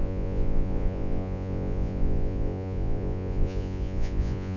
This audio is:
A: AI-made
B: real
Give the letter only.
A